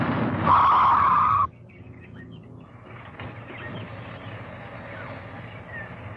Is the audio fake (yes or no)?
no